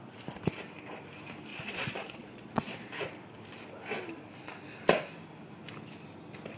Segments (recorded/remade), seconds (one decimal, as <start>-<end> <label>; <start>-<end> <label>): 0.0-1.5 recorded; 1.5-2.9 remade; 2.9-6.6 recorded